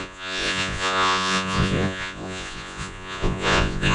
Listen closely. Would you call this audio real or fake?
fake